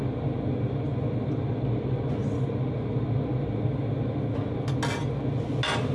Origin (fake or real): real